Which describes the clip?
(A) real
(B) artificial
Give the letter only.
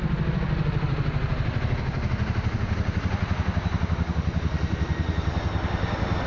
B